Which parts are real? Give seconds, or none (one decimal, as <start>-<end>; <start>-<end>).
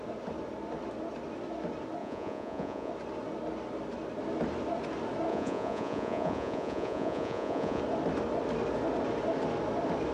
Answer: 0.0-2.0; 2.9-5.3; 7.8-10.1